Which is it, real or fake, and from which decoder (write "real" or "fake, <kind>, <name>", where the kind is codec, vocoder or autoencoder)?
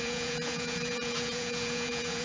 fake, vocoder, Vocos